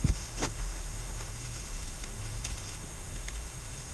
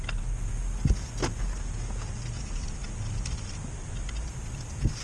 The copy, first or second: first